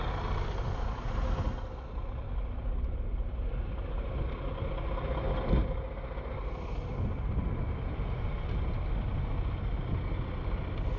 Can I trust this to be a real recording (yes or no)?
yes